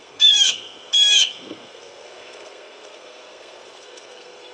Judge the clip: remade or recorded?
remade